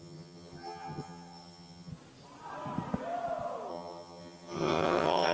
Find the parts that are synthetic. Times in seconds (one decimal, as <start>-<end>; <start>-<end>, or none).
0.0-1.9; 3.7-5.3